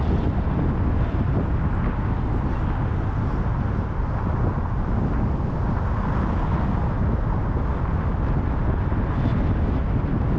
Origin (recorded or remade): recorded